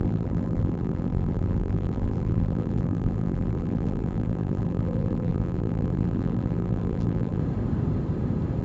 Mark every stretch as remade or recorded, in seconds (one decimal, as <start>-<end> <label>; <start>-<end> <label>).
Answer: 0.0-7.4 remade; 7.4-8.6 recorded